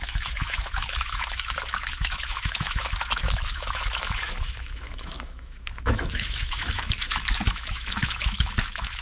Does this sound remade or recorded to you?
remade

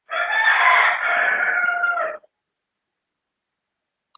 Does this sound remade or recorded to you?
recorded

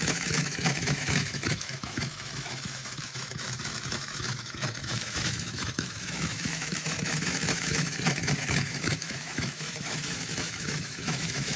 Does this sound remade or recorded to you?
remade